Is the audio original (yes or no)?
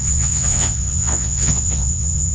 no